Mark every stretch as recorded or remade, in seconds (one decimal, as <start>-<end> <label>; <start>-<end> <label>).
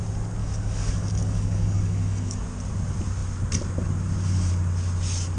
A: 0.0-0.4 recorded; 0.4-2.4 remade; 2.4-5.4 recorded